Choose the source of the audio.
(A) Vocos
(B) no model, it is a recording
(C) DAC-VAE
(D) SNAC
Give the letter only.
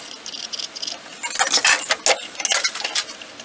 B